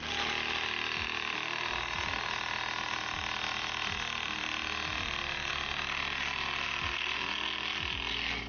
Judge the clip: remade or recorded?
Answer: recorded